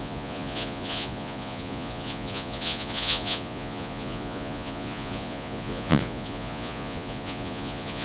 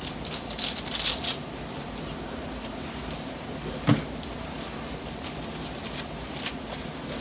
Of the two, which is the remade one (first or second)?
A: first